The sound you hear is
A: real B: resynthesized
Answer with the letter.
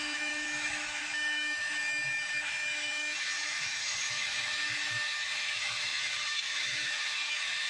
B